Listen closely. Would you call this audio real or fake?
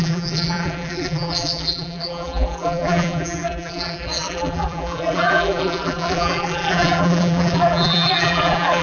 fake